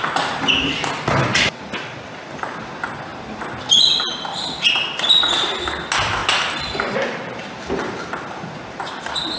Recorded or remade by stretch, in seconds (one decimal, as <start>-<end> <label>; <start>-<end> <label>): 0.0-9.4 recorded